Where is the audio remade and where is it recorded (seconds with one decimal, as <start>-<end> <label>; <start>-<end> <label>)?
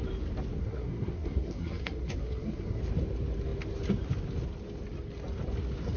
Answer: 0.0-0.6 recorded; 0.6-2.8 remade; 2.8-6.0 recorded